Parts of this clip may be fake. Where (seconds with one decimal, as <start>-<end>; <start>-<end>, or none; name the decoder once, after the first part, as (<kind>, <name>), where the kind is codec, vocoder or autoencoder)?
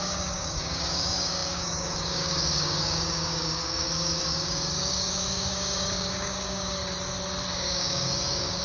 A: 0.0-6.8 (codec, DAC); 7.5-8.6